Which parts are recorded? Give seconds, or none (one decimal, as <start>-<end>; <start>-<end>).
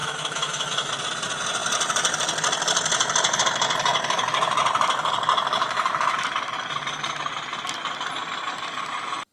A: 0.9-9.3